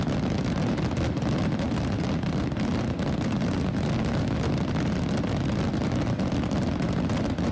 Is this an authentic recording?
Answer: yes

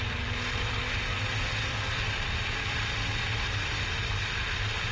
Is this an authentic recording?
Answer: yes